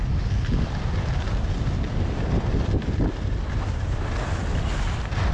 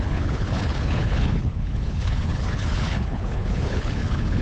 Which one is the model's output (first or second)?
second